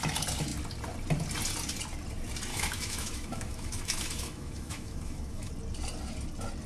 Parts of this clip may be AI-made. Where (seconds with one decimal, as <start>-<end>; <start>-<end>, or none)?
2.5-5.5